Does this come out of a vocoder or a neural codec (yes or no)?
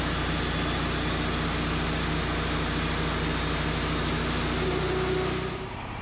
no